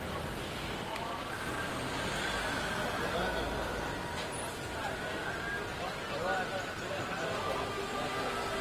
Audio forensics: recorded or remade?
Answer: recorded